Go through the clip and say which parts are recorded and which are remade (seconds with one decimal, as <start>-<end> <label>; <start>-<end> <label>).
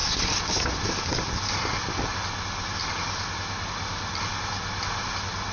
0.0-2.1 recorded; 2.1-3.2 remade; 3.2-5.5 recorded